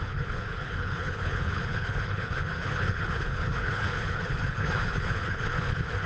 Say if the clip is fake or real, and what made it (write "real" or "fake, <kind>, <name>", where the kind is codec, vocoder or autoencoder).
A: fake, codec, HILCodec